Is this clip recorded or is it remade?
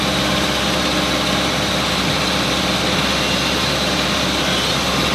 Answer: recorded